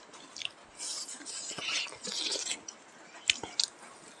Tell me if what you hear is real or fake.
real